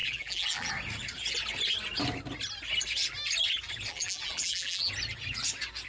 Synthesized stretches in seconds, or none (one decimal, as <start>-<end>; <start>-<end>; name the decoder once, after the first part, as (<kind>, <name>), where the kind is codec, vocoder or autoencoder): 0.0-0.7 (vocoder, BigVGAN v2); 3.9-4.9